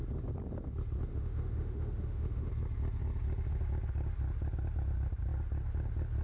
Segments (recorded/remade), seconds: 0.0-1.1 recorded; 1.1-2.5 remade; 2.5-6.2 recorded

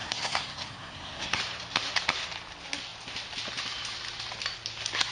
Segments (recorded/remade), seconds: 0.0-1.4 remade; 1.4-5.1 recorded

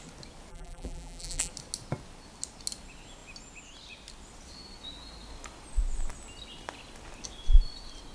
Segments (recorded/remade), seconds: 0.0-0.5 recorded; 0.5-1.5 remade; 1.5-8.1 recorded

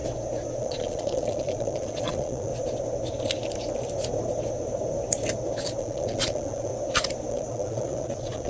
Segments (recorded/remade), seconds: 0.0-0.6 recorded; 0.6-2.5 remade; 2.5-5.8 recorded; 5.8-6.7 remade; 6.7-7.3 recorded; 7.3-8.5 remade

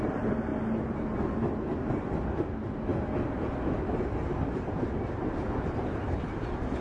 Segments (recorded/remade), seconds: 0.0-0.5 remade; 0.5-1.9 recorded; 1.9-2.9 remade; 2.9-6.2 recorded; 6.2-6.8 remade